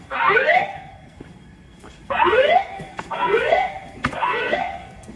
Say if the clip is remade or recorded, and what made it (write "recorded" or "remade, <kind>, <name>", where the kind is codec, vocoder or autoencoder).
remade, codec, SNAC